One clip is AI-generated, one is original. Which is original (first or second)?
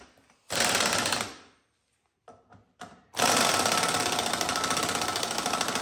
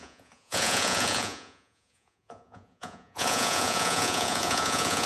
first